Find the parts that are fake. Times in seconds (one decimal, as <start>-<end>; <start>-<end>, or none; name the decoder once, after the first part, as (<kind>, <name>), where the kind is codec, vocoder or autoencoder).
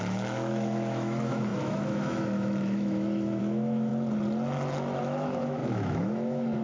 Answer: 0.0-3.9 (autoencoder, DAC-VAE); 5.0-6.6